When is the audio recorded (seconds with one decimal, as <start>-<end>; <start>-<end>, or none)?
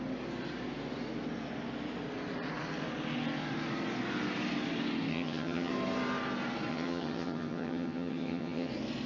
0.0-5.1; 5.7-6.7; 8.7-9.1